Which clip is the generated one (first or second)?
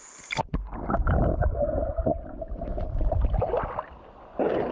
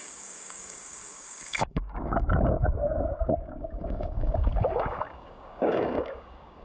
second